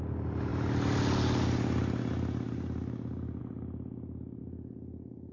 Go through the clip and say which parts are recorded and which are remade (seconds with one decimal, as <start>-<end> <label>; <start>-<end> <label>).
0.0-5.3 recorded